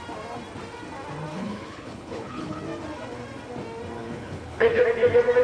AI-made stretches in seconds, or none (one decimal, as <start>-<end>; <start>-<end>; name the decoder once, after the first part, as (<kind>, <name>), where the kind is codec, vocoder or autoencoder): 1.3-2.6 (codec, HILCodec); 4.0-4.8